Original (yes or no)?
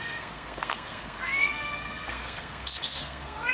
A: no